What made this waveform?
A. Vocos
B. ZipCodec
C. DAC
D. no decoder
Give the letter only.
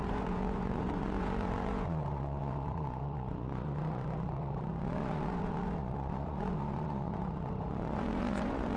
A